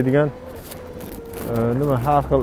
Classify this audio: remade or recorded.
recorded